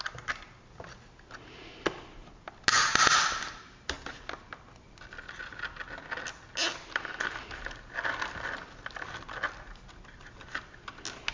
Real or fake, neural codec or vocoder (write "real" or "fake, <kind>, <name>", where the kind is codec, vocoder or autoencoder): real